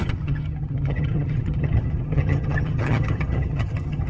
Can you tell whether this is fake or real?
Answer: fake